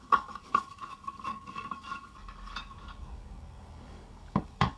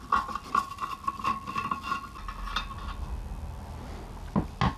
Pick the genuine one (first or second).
second